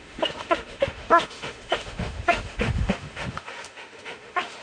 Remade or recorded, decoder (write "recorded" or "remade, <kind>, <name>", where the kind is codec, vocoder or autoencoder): remade, autoencoder, DAC-VAE